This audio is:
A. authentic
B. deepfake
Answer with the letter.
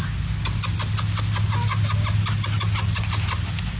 A